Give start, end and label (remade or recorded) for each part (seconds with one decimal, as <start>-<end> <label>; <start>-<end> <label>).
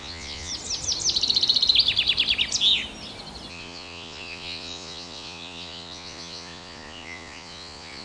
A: 0.0-0.5 remade; 0.5-3.5 recorded; 3.5-8.0 remade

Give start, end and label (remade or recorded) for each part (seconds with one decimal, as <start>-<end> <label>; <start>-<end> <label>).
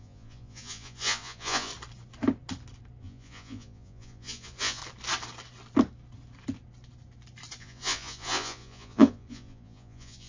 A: 0.0-1.7 remade; 1.7-3.0 recorded; 3.0-4.8 remade; 4.8-7.6 recorded; 7.6-10.3 remade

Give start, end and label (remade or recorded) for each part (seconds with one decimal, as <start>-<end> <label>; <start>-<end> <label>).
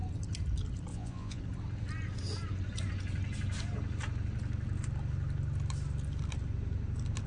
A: 0.0-0.9 recorded; 0.9-1.4 remade; 1.4-7.3 recorded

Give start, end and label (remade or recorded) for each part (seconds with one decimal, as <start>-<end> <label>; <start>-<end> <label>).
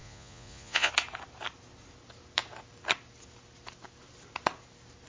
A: 0.0-0.9 remade; 0.9-5.1 recorded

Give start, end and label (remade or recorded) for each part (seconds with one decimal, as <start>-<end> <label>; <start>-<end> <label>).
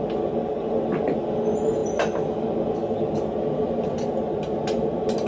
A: 0.0-5.3 recorded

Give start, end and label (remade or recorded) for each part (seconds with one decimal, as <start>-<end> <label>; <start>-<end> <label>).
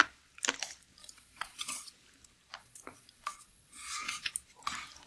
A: 0.0-1.0 recorded; 1.0-1.9 remade; 1.9-2.6 recorded; 2.6-4.3 remade; 4.3-5.1 recorded